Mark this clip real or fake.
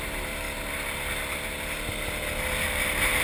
real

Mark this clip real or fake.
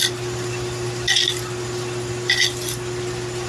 real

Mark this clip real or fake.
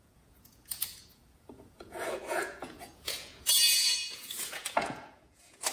fake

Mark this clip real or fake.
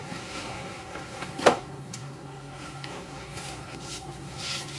fake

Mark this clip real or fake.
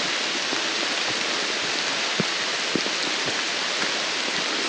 real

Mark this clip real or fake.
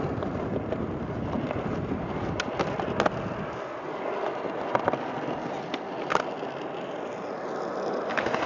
real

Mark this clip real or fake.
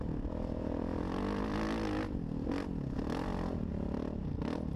real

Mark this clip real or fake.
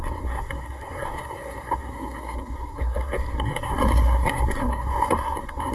fake